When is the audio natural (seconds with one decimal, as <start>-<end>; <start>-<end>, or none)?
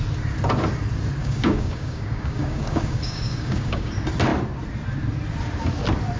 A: 0.0-1.2; 3.9-6.2